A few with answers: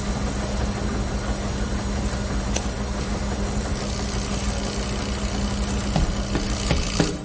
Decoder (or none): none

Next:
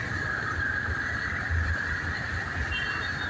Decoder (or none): none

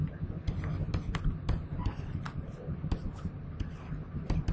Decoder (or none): none